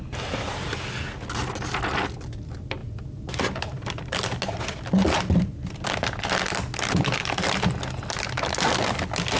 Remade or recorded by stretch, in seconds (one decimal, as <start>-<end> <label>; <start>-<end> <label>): 0.0-9.4 recorded

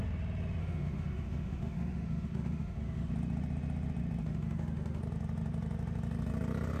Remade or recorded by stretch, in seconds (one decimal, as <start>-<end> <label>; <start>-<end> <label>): 0.0-0.6 recorded; 0.6-3.1 remade; 3.1-4.2 recorded; 4.2-5.0 remade; 5.0-6.8 recorded